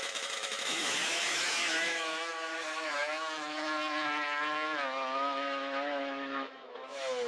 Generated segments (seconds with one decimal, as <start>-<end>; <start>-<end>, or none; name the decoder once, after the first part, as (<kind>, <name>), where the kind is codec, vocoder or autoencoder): 0.0-7.3 (autoencoder, DAC-VAE)